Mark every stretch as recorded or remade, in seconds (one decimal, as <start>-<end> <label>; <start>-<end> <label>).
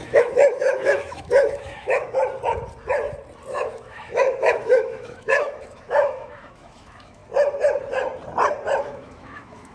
0.0-2.2 remade; 2.2-3.5 recorded; 3.5-7.2 remade; 7.2-8.8 recorded; 8.8-9.7 remade